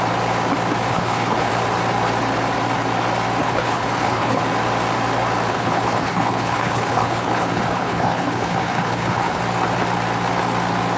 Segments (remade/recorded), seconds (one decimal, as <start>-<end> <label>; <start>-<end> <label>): 0.0-0.9 recorded; 0.9-1.5 remade; 1.5-3.4 recorded; 3.4-4.4 remade; 4.4-5.5 recorded; 5.5-9.4 remade; 9.4-11.0 recorded